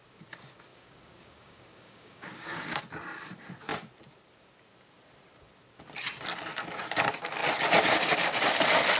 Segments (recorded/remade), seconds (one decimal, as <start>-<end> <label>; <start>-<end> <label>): 0.0-0.7 recorded; 0.7-2.8 remade; 2.8-9.0 recorded